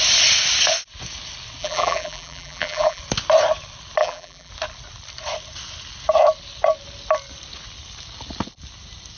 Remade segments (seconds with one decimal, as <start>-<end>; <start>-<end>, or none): 1.6-3.0; 4.0-4.5

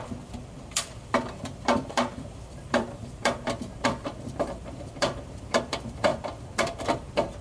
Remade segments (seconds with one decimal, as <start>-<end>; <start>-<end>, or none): 0.0-7.4

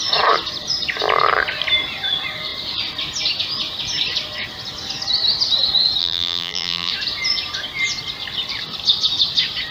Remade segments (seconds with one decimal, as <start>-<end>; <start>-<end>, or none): 6.0-6.9